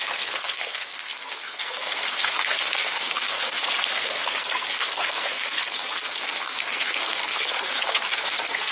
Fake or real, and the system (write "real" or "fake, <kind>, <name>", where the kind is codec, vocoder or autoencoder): fake, codec, SNAC